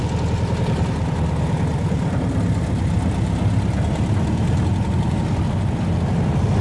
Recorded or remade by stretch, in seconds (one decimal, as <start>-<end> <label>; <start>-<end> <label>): 0.0-1.7 recorded; 1.7-2.3 remade; 2.3-6.6 recorded